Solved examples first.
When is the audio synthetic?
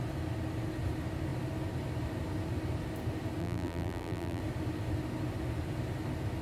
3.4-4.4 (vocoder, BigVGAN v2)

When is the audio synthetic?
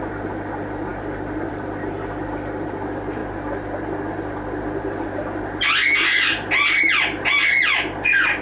none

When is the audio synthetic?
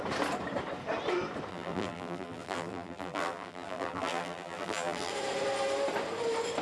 1.5-5.1 (vocoder, BigVGAN v2)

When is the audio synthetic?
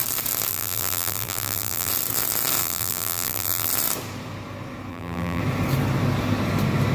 0.5-1.9 (vocoder, BigVGAN v2); 2.6-3.7; 4.9-5.4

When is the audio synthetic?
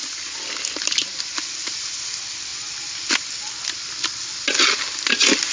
none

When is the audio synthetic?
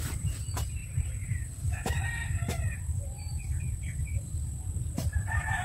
2.2-5.6 (vocoder, BigVGAN v2)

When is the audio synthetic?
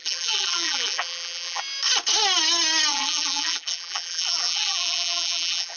0.0-1.6 (vocoder, BigVGAN v2); 2.9-5.8